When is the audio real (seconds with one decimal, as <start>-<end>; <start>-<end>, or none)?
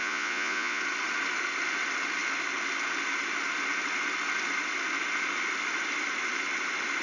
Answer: 0.8-7.0